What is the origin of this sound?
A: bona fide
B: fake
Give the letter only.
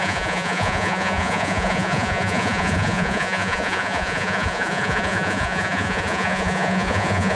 B